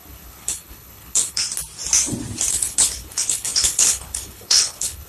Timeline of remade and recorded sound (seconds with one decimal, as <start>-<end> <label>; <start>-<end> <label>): 0.0-1.4 remade; 1.4-2.5 recorded; 2.5-5.1 remade